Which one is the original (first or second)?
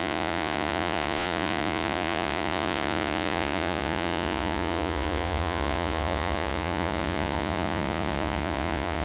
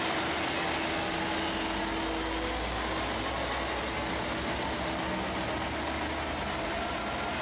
second